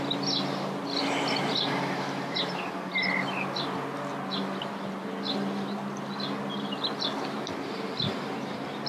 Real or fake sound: real